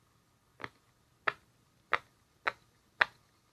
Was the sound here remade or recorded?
recorded